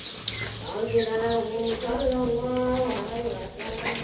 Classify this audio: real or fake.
real